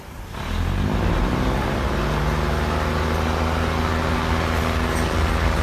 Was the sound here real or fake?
real